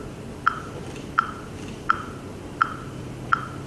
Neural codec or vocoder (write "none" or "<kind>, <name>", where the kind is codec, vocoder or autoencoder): vocoder, BigVGAN v2